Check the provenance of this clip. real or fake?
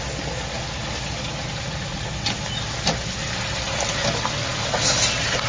real